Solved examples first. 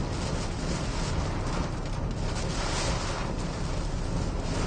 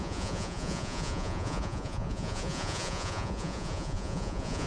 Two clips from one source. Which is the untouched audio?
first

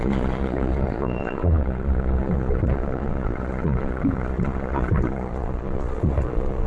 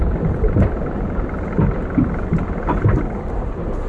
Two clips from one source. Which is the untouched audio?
second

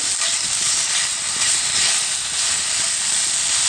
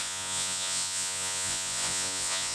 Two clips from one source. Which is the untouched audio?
first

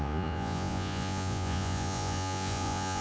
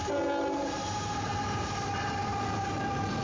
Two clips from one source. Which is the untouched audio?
second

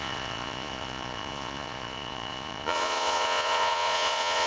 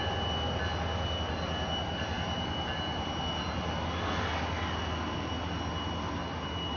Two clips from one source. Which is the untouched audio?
second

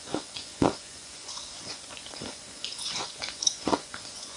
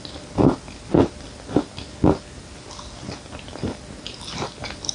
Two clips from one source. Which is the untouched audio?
second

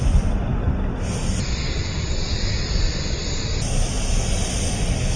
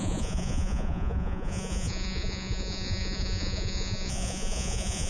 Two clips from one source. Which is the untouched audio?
first